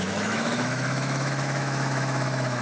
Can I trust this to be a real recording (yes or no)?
no